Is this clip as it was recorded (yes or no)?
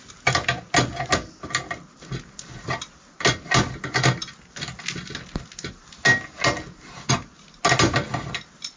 yes